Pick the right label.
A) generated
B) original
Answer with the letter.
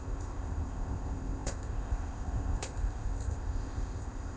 A